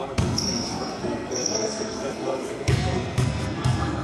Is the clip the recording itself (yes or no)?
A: no